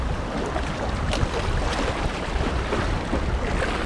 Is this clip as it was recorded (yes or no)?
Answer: yes